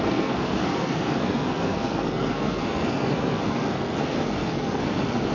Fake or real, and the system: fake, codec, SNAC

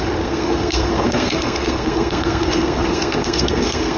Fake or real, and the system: fake, codec, SNAC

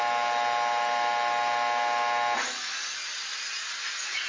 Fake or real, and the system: real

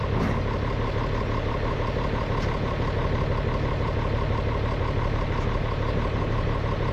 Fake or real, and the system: real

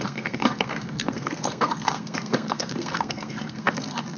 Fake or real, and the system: fake, codec, SNAC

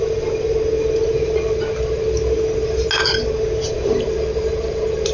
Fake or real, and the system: real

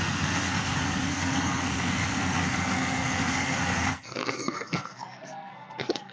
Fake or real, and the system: fake, codec, SNAC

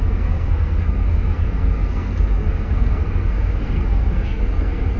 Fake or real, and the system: fake, codec, SNAC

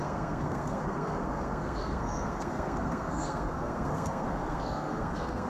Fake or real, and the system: fake, codec, SNAC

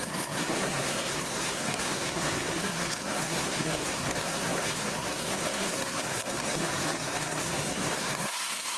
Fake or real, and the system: fake, codec, SNAC